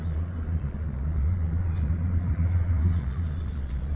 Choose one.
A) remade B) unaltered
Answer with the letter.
A